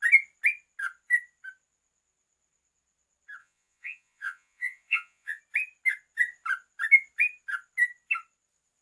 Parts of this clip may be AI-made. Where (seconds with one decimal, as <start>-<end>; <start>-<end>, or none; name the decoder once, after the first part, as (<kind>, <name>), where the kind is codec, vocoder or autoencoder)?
3.4-5.4 (vocoder, Vocos)